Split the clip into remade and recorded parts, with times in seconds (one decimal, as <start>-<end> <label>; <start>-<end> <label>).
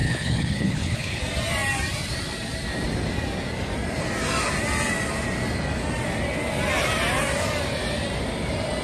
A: 0.0-1.2 remade; 1.2-8.8 recorded